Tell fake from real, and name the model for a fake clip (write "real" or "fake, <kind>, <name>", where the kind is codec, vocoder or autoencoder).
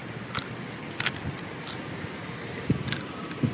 real